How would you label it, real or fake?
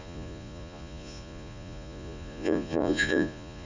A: fake